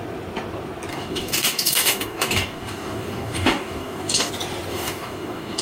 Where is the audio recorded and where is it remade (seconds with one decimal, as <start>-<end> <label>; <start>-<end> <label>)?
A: 0.0-0.9 recorded; 0.9-4.3 remade; 4.3-4.7 recorded; 4.7-5.6 remade